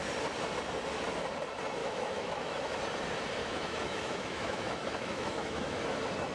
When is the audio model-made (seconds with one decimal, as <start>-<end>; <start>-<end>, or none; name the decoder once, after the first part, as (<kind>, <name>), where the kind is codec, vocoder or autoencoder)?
1.8-2.8 (autoencoder, DAC-VAE); 3.4-5.8